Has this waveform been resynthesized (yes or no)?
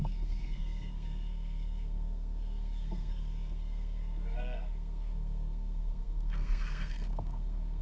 yes